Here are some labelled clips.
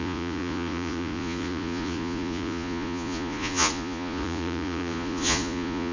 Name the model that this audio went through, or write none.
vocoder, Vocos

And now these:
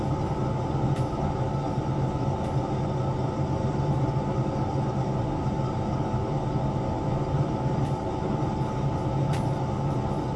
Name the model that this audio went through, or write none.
none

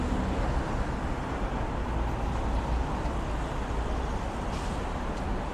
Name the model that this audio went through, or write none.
none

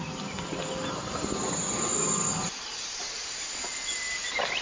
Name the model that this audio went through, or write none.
none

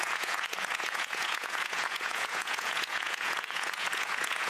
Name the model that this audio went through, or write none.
vocoder, Vocos